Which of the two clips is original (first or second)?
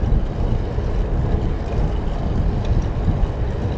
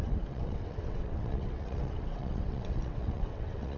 first